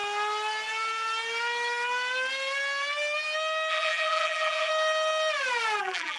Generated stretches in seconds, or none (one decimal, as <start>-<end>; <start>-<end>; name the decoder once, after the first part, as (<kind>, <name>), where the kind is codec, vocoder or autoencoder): 3.7-4.7 (vocoder, BigVGAN v2); 5.8-6.2